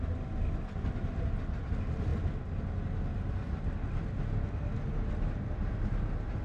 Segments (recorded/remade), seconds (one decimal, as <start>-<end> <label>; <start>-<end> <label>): 0.0-6.4 recorded